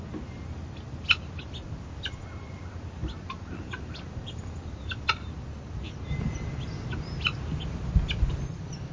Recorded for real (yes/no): yes